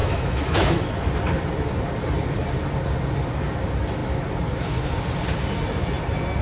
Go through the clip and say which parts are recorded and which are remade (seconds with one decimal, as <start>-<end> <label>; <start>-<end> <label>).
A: 0.0-0.8 remade; 0.8-6.4 recorded